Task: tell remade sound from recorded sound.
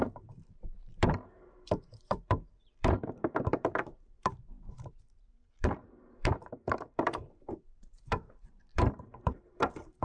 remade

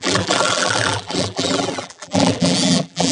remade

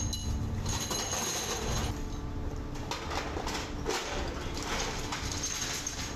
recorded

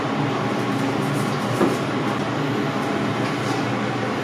recorded